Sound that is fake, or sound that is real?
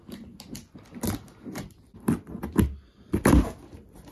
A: real